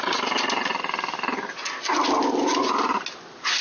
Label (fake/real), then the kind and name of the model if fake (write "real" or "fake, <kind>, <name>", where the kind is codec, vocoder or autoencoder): real